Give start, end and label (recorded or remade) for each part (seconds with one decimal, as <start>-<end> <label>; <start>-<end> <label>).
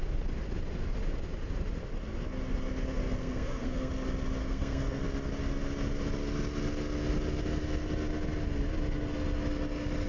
0.0-3.2 recorded; 3.2-3.9 remade; 3.9-4.4 recorded; 4.4-5.0 remade; 5.0-10.1 recorded